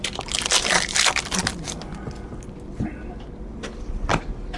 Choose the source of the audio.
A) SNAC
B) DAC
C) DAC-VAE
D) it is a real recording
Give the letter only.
D